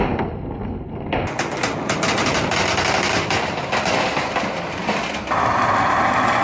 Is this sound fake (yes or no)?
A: no